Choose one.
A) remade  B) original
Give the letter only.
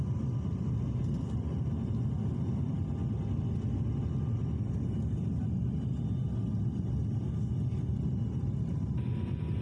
B